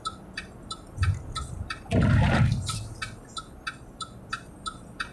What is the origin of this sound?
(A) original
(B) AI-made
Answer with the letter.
A